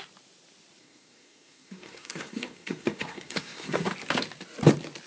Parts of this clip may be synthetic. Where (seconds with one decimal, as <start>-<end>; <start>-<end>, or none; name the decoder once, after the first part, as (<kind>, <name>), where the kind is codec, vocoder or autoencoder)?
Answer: 0.8-3.9 (codec, SNAC)